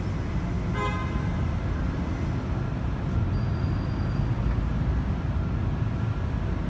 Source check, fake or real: real